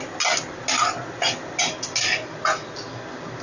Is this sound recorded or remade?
recorded